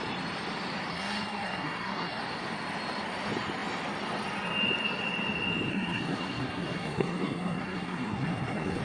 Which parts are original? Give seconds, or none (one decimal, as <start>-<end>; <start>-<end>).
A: 0.0-0.9; 2.2-5.7